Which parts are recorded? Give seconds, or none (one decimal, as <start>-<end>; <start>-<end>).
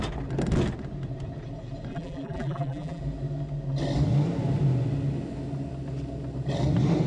0.0-1.9; 3.0-7.1